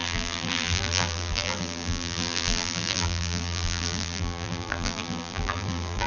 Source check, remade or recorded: remade